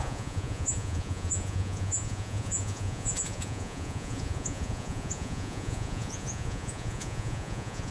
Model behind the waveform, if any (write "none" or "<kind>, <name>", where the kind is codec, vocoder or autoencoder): vocoder, Vocos